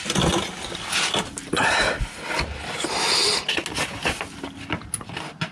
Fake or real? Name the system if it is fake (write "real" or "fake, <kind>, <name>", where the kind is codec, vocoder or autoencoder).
real